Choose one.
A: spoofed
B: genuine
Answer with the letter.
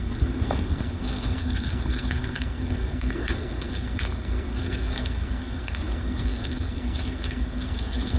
A